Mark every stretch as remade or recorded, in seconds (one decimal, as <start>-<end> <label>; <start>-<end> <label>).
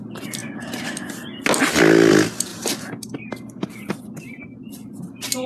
0.0-2.5 recorded; 2.5-3.3 remade; 3.3-5.5 recorded